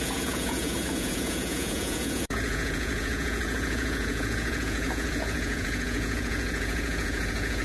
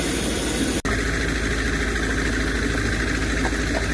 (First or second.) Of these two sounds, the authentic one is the second